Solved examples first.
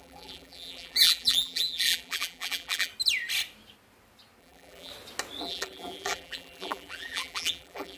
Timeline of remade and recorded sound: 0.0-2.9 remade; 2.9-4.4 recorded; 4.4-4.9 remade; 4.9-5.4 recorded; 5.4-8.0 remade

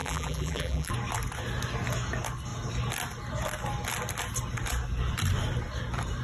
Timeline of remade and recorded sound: 0.0-0.9 remade; 0.9-6.2 recorded

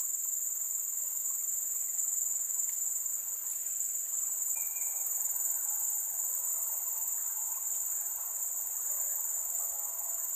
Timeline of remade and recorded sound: 0.0-1.2 remade; 1.2-10.4 recorded

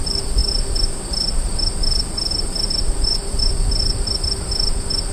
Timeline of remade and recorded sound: 0.0-5.1 recorded